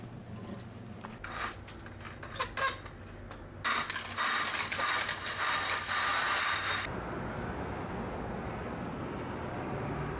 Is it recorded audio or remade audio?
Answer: recorded